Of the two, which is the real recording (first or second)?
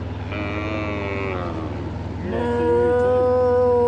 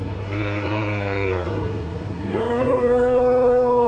first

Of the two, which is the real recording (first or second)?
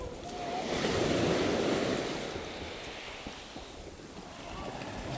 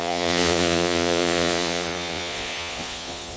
first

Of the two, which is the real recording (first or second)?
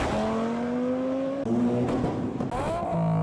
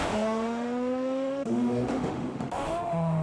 first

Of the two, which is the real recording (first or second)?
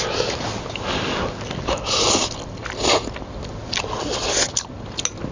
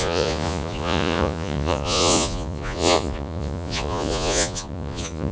first